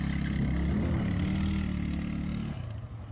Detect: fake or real real